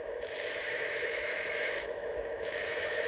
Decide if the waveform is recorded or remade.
remade